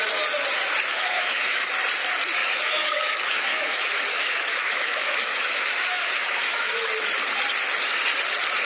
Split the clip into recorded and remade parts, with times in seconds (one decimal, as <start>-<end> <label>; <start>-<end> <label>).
0.0-0.9 recorded; 0.9-1.7 remade; 1.7-2.4 recorded; 2.4-6.9 remade; 6.9-8.6 recorded